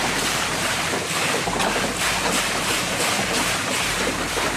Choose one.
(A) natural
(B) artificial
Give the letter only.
B